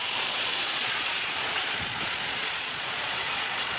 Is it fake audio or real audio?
fake